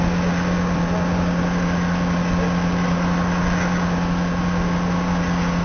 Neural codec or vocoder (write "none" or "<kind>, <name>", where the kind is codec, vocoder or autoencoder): none